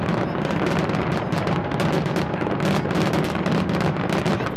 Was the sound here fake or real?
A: real